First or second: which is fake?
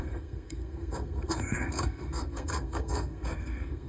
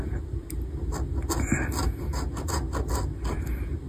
first